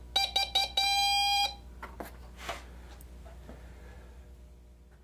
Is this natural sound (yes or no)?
yes